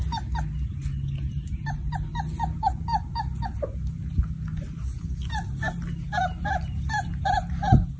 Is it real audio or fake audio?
real